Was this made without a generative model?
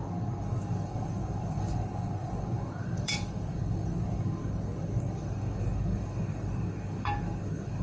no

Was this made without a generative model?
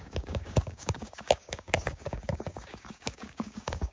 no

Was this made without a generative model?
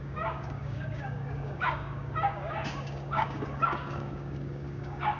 no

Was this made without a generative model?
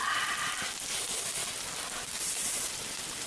yes